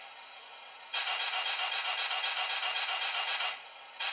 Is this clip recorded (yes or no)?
no